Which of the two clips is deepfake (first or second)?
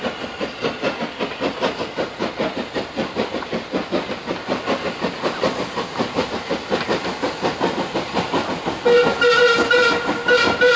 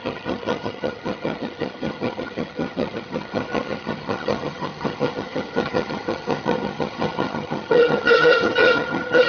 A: second